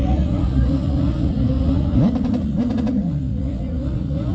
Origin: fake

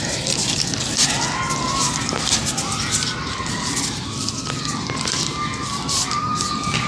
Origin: real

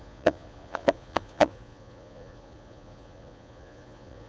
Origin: fake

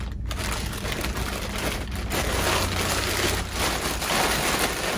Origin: real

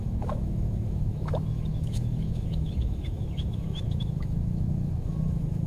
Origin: fake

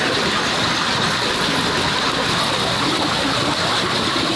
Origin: real